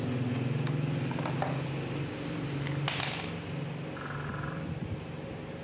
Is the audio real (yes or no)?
yes